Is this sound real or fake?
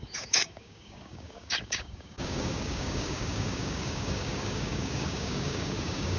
fake